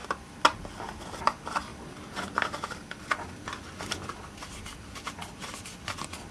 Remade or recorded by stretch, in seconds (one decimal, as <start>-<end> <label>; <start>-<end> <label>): 0.0-6.3 recorded